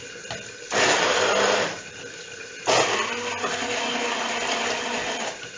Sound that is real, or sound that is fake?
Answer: real